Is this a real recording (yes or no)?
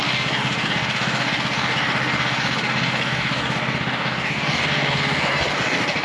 no